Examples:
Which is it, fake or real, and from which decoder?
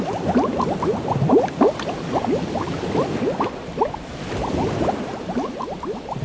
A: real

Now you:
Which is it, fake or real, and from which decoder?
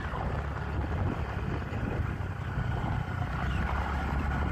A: real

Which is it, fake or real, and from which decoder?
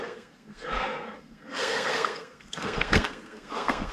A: fake, codec, SNAC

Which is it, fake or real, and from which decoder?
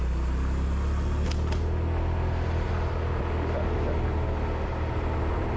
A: real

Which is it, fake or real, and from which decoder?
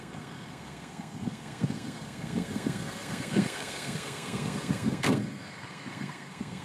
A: fake, codec, SNAC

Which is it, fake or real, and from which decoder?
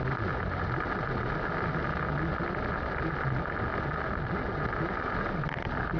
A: real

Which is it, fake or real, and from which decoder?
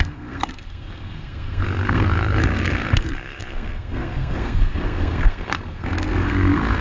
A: fake, codec, SNAC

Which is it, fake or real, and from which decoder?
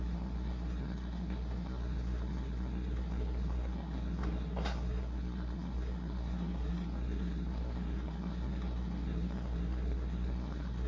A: fake, codec, SNAC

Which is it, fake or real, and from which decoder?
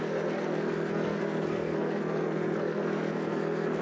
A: fake, codec, SNAC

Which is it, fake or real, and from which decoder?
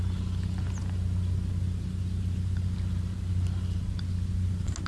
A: real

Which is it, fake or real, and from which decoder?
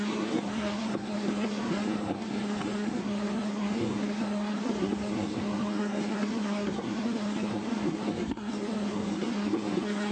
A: fake, codec, SNAC